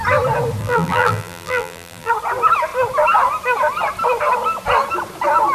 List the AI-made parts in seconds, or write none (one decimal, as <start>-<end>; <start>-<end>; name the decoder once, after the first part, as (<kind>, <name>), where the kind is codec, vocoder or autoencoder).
0.6-2.1 (vocoder, BigVGAN v2)